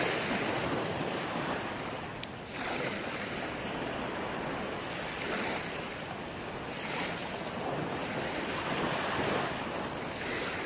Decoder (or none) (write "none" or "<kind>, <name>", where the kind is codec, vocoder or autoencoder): none